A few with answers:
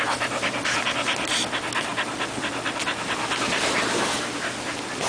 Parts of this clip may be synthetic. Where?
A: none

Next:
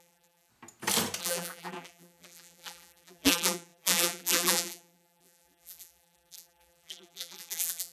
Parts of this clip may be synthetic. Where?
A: 0.0-0.5; 1.2-7.9

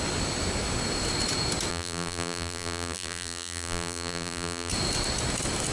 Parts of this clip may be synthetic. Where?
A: 1.7-4.7

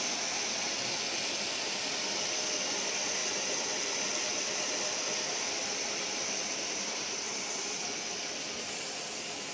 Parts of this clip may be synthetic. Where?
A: 0.0-9.5

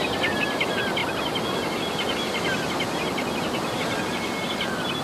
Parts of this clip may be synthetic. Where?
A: none

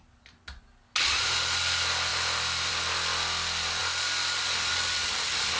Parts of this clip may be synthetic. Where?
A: none

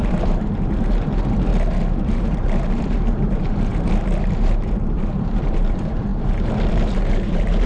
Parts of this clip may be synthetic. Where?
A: 0.0-1.5; 2.0-3.7; 4.2-7.7